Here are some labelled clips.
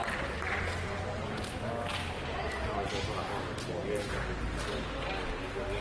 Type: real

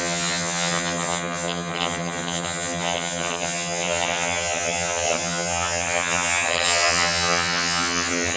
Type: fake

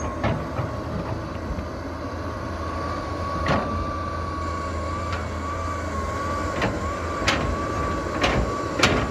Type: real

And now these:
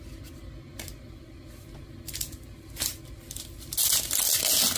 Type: real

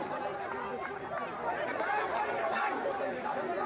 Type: real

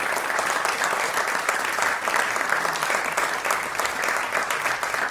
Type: real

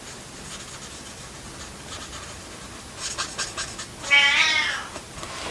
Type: real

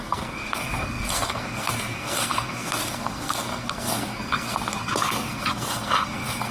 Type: fake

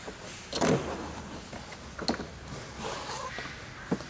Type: real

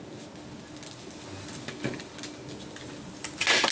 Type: real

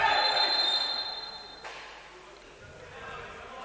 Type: real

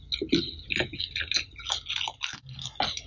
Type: real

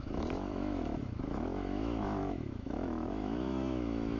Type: fake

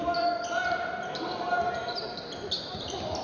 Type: real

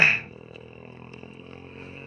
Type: fake